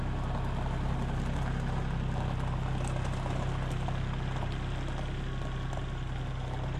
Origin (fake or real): real